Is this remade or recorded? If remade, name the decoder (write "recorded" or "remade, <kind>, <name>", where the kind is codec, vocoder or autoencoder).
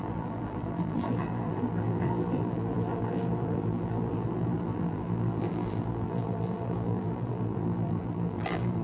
remade, vocoder, BigVGAN v2